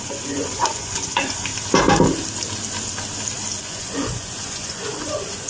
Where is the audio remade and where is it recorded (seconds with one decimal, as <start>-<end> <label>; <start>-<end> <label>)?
0.0-1.5 remade; 1.5-3.6 recorded; 3.6-5.5 remade